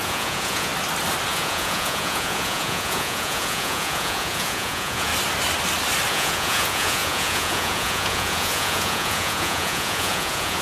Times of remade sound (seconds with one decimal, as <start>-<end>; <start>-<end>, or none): 0.0-0.7; 1.3-5.1; 6.1-10.6